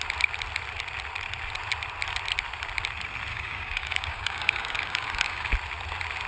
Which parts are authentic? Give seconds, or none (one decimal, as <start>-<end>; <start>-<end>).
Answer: 0.0-3.3; 5.5-6.3